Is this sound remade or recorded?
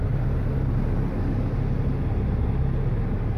recorded